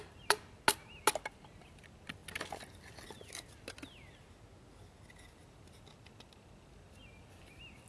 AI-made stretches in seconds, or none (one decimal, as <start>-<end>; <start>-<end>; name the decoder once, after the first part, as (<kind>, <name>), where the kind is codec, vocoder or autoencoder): none